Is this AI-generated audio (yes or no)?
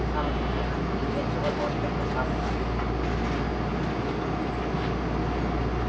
no